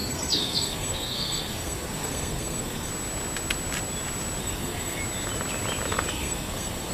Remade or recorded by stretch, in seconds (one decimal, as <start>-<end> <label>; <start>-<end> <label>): 0.0-2.9 remade; 2.9-4.4 recorded; 4.4-5.0 remade; 5.0-6.1 recorded; 6.1-6.9 remade